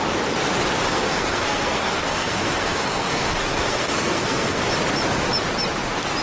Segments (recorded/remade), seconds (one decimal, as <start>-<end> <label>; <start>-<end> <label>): 0.0-0.9 recorded; 0.9-4.6 remade; 4.6-6.2 recorded